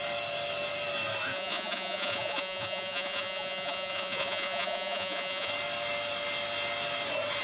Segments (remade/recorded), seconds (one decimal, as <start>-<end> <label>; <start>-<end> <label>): 0.0-1.3 recorded; 1.3-5.5 remade; 5.5-7.4 recorded